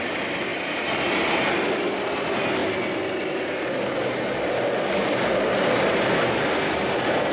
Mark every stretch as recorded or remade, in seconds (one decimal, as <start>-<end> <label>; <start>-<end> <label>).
0.0-7.3 recorded